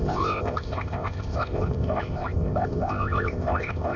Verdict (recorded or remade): remade